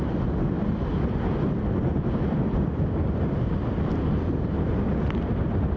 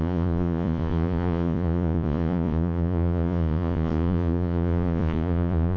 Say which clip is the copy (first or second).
second